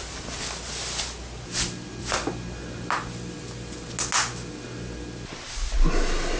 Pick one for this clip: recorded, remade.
recorded